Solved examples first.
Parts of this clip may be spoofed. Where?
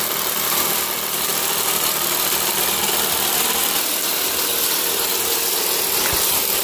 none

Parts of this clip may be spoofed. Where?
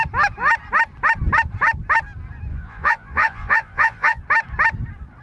2.5-4.2 (vocoder, Vocos)